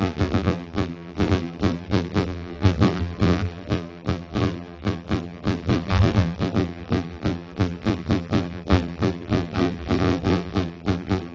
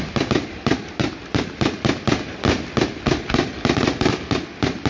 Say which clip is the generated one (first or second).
first